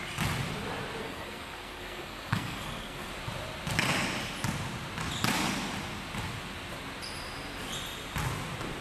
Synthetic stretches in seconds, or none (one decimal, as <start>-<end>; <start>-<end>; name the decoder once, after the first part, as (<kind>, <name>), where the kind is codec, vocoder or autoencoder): 1.0-3.1 (codec, SNAC)